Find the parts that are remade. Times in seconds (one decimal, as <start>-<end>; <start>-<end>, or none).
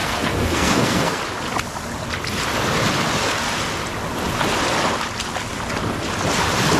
0.0-1.2